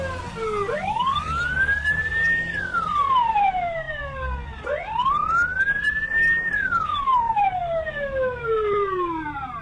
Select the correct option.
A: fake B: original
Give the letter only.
B